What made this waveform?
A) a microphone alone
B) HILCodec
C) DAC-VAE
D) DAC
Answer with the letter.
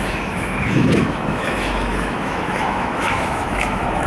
C